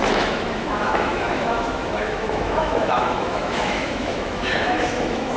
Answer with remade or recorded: remade